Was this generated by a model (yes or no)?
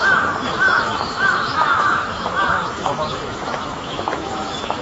yes